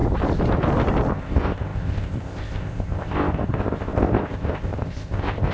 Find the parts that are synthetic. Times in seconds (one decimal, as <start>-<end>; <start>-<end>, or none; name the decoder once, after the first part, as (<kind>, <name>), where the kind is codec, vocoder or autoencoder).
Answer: 1.1-5.5 (codec, ZipCodec)